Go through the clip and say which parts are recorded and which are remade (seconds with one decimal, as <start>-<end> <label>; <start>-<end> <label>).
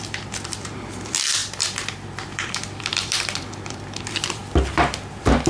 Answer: 0.0-4.4 remade; 4.4-5.1 recorded; 5.1-5.5 remade